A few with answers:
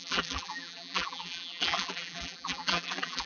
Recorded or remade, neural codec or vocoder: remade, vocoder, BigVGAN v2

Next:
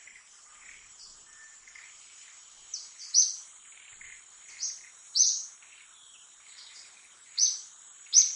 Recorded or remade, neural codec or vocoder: remade, vocoder, BigVGAN v2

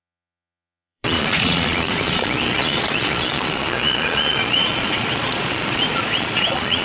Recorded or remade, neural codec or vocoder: remade, vocoder, Vocos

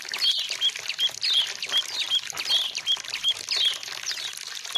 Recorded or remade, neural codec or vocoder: recorded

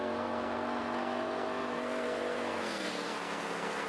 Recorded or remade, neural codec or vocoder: remade, codec, SNAC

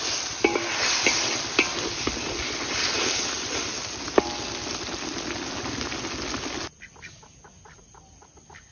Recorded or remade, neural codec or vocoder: recorded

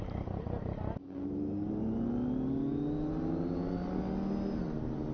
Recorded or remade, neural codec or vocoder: recorded